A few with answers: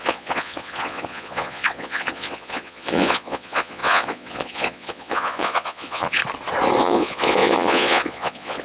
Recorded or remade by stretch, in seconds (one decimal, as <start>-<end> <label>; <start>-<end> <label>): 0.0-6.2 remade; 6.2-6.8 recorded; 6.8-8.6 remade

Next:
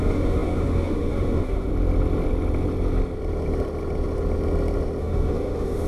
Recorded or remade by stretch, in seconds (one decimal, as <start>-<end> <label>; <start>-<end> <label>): 0.0-1.7 remade; 1.7-5.0 recorded; 5.0-5.9 remade

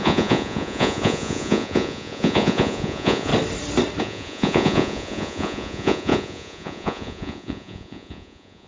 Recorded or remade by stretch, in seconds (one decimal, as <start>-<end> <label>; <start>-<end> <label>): 0.0-3.3 remade; 3.3-4.0 recorded; 4.0-8.7 remade